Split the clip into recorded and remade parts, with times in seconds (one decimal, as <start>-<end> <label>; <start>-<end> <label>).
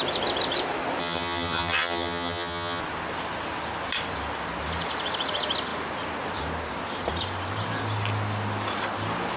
0.0-1.0 recorded; 1.0-2.8 remade; 2.8-9.4 recorded